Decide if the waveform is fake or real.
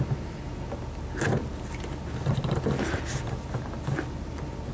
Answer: real